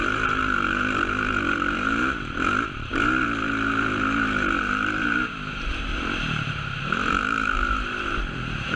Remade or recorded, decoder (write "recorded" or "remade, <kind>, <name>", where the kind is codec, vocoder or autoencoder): remade, vocoder, BigVGAN v2